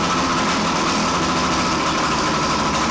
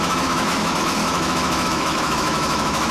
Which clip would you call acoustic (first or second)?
first